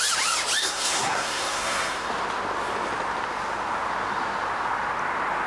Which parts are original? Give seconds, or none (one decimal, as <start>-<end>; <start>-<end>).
0.0-0.6; 2.1-5.5